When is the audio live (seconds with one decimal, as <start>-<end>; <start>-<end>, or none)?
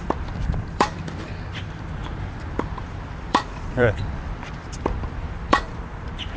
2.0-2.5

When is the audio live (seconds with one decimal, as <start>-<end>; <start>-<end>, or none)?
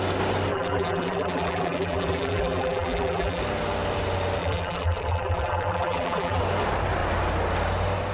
0.0-0.5; 3.4-4.4; 6.4-8.1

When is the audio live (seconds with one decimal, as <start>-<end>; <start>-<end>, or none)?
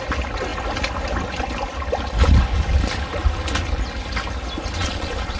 0.0-4.8